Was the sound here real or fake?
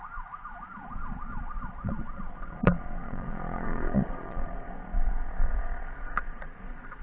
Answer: fake